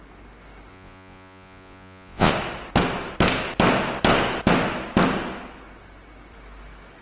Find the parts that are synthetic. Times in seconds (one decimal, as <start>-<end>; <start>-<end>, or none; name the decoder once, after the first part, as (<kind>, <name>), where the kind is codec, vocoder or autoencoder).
0.7-2.3 (vocoder, Vocos)